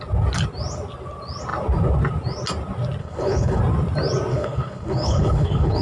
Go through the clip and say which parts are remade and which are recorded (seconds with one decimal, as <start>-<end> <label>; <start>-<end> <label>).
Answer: 0.0-3.0 recorded; 3.0-3.6 remade; 3.6-4.3 recorded; 4.3-5.8 remade